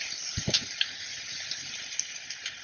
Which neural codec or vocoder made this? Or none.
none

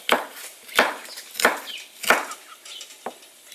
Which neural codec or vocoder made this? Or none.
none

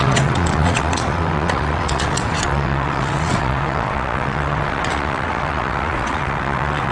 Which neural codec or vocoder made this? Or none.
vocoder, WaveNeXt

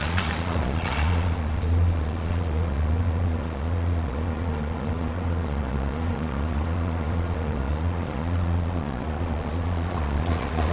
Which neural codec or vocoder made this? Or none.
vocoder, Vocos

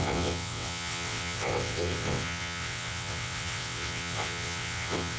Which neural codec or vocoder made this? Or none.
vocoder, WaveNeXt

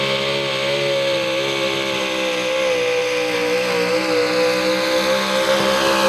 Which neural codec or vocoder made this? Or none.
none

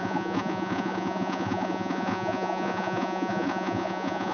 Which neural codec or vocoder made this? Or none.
vocoder, Vocos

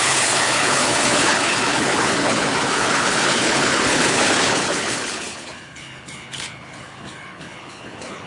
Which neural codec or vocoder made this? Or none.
codec, HILCodec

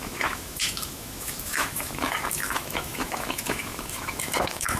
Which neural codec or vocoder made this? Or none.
autoencoder, DAC-VAE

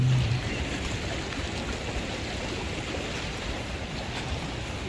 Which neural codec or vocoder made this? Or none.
none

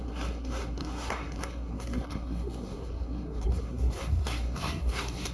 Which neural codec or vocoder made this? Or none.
codec, SNAC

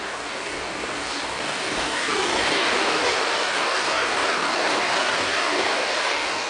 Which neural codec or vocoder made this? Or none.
codec, DAC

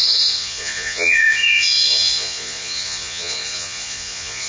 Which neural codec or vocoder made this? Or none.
vocoder, Vocos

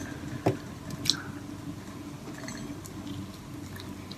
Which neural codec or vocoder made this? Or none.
none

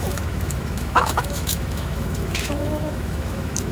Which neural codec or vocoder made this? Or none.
autoencoder, DAC-VAE